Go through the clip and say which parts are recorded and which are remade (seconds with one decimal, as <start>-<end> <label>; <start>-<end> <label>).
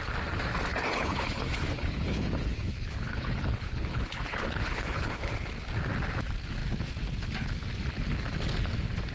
0.0-0.7 recorded; 0.7-5.3 remade; 5.3-9.1 recorded